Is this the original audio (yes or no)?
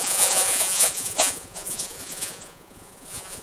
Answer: no